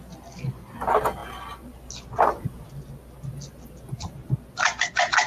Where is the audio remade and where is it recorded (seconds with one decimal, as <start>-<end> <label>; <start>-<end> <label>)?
0.0-5.3 recorded